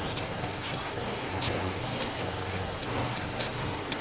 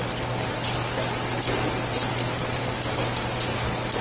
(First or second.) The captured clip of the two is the second